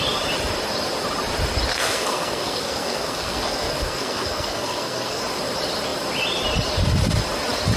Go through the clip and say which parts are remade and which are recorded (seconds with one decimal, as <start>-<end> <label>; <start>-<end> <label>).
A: 0.0-1.7 recorded; 1.7-5.2 remade; 5.2-7.8 recorded